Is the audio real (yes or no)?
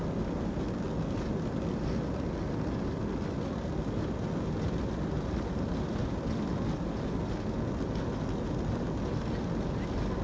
yes